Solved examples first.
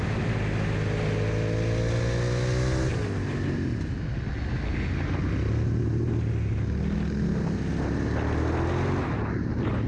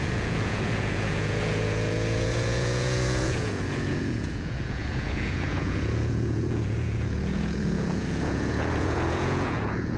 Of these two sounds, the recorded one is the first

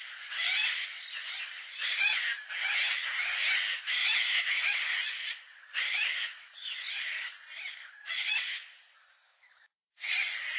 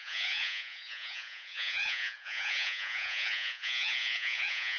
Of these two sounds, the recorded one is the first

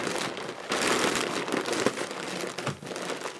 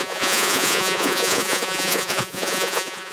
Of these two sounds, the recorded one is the first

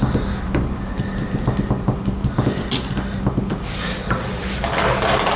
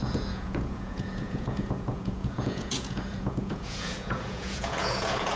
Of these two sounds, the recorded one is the first